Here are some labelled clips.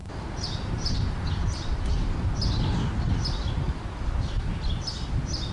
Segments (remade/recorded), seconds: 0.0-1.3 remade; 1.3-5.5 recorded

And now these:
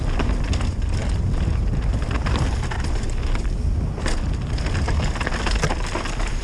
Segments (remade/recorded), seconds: 0.0-6.4 recorded

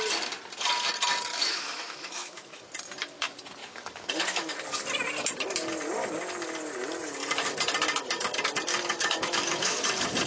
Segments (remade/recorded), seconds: 0.0-1.3 recorded; 1.3-2.6 remade; 2.6-3.6 recorded; 3.6-4.5 remade; 4.5-8.7 recorded; 8.7-9.8 remade; 9.8-10.3 recorded

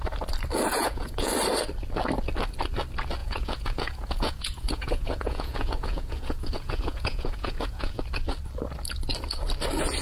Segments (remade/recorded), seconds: 0.0-0.7 recorded; 0.7-1.3 remade; 1.3-3.2 recorded; 3.2-8.0 remade; 8.0-10.0 recorded

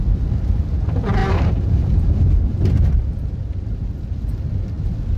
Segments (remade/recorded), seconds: 0.0-1.2 recorded; 1.2-4.3 remade; 4.3-5.2 recorded